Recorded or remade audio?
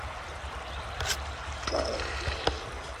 recorded